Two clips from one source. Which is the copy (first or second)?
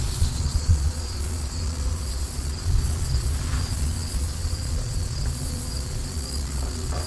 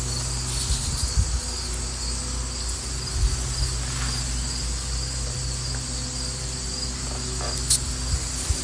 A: first